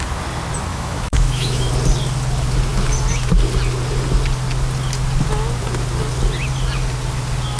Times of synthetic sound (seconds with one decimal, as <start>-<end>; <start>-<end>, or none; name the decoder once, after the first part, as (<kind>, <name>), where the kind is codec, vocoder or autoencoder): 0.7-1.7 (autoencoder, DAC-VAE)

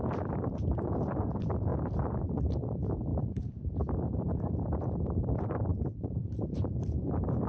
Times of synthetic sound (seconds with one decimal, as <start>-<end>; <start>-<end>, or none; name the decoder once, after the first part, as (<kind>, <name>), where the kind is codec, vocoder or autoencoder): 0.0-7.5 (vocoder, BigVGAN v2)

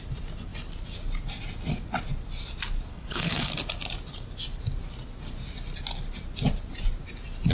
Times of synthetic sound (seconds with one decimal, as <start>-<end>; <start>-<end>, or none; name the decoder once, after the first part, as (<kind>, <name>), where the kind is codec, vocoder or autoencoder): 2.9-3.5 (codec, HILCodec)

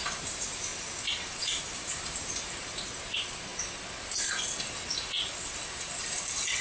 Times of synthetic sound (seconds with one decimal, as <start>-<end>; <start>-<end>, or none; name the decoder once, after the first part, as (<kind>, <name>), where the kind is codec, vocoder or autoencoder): 0.0-0.7 (vocoder, BigVGAN v2); 1.4-3.5; 6.0-6.6

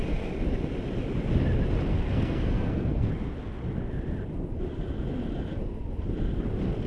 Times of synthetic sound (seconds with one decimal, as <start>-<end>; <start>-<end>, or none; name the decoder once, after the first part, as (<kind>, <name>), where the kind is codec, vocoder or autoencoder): 1.9-3.1 (codec, SNAC)

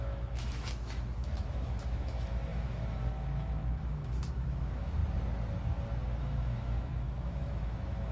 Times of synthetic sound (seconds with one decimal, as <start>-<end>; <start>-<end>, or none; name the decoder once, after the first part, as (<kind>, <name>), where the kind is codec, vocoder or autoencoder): 0.0-5.0 (autoencoder, DAC-VAE); 6.2-8.1